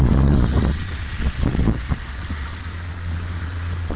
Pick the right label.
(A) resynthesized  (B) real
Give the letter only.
A